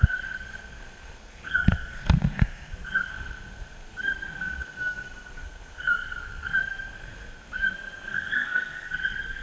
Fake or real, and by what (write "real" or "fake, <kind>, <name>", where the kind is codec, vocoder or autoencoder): fake, codec, SNAC